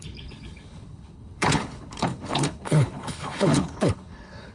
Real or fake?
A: fake